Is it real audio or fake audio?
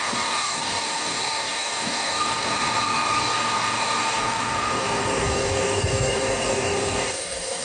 fake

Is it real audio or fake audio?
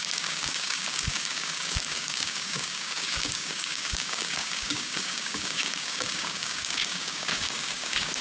fake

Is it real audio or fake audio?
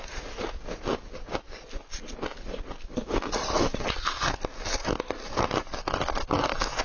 real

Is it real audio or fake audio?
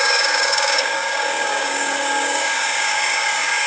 fake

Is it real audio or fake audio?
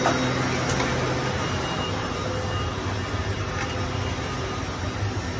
real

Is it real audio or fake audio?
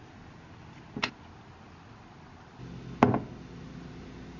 real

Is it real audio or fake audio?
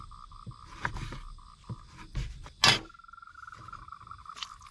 real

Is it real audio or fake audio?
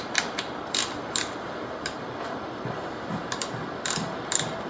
real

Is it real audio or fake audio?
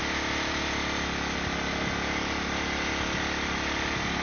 real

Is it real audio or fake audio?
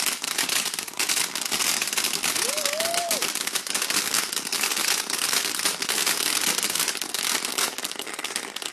fake